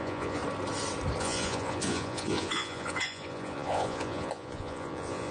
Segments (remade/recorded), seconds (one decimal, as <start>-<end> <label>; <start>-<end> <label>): 0.0-0.4 remade; 0.4-1.2 recorded; 1.2-5.3 remade